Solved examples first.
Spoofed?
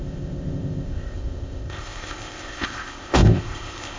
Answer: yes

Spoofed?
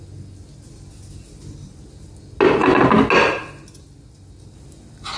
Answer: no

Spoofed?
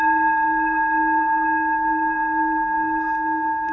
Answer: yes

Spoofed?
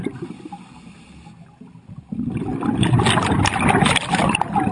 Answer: no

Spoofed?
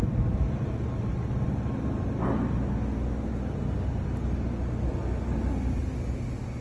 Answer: no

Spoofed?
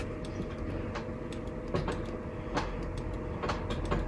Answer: no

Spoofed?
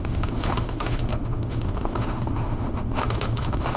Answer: yes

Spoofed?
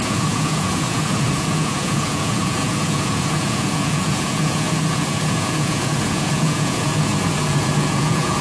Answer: yes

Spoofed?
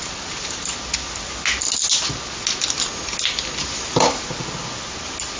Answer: no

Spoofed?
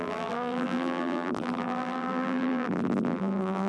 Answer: yes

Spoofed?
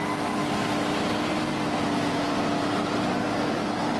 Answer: no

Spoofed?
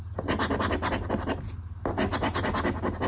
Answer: no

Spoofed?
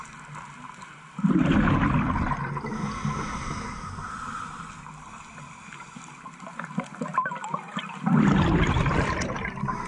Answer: no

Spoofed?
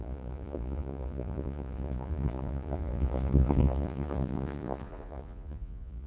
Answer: yes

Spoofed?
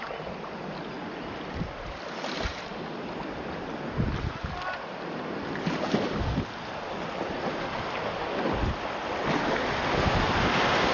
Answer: no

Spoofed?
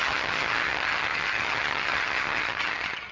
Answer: yes